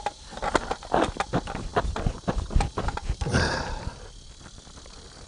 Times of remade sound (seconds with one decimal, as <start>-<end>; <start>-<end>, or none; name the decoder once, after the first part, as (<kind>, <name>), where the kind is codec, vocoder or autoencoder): none